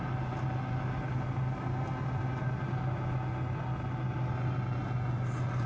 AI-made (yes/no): no